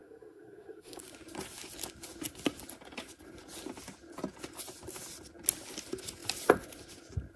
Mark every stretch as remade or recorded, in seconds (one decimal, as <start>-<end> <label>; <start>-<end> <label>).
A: 0.0-1.0 remade; 1.0-7.4 recorded